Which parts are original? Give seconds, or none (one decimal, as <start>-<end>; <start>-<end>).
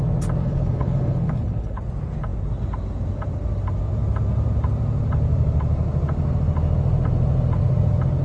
0.0-0.4; 1.8-8.2